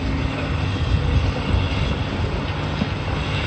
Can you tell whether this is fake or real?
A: real